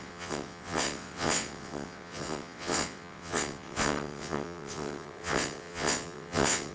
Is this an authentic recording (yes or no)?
no